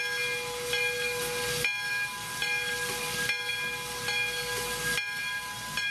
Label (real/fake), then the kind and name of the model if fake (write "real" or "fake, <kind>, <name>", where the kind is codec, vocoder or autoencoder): real